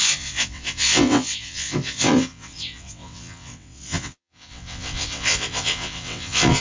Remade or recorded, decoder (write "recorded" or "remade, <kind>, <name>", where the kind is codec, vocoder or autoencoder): remade, vocoder, WaveNeXt